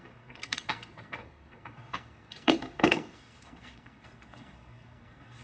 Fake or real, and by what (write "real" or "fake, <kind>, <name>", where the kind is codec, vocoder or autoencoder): fake, codec, SNAC